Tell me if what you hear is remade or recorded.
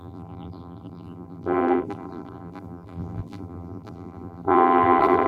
remade